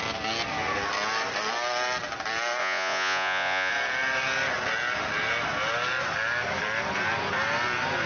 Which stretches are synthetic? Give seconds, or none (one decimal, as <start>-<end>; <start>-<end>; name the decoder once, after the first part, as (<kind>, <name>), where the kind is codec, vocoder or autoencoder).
2.6-3.7 (vocoder, Vocos)